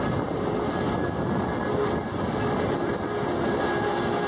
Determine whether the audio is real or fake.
real